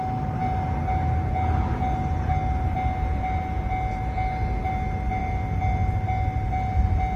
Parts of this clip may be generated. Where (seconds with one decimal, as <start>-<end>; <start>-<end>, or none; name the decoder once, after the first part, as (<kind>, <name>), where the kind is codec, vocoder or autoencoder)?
none